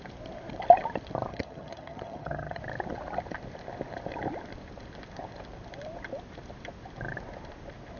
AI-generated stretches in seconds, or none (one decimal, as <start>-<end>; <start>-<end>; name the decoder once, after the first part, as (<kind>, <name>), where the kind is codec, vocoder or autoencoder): 1.3-2.6 (vocoder, HiFi-GAN)